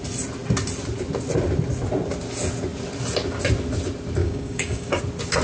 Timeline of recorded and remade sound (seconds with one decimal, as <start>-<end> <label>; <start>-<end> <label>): 0.0-4.2 recorded; 4.2-5.0 remade; 5.0-5.4 recorded

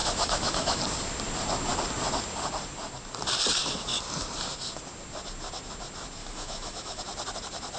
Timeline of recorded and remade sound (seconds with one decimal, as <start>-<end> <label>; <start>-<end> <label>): 0.0-0.8 remade; 0.8-6.2 recorded; 6.2-7.0 remade; 7.0-7.8 recorded

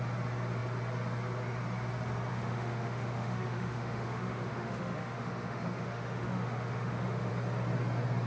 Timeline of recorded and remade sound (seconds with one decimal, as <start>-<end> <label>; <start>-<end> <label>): 0.0-2.3 recorded; 2.3-7.3 remade; 7.3-8.3 recorded

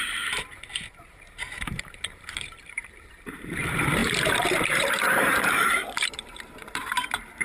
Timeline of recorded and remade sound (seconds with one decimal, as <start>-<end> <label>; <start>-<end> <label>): 0.0-7.4 remade